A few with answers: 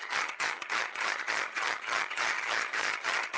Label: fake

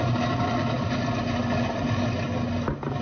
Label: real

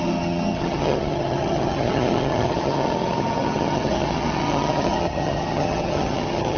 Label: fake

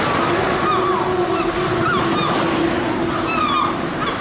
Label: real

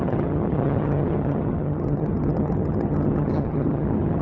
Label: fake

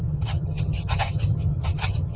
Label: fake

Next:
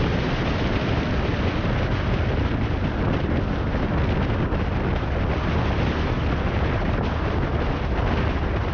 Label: real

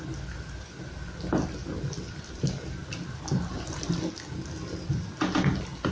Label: real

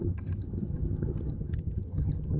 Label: fake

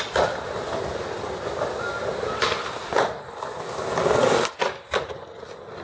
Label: real